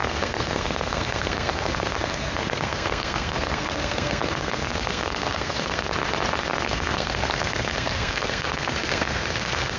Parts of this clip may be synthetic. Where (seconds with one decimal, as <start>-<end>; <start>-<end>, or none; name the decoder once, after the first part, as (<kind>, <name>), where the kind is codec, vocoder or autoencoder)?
0.0-5.9 (codec, SNAC); 6.4-9.8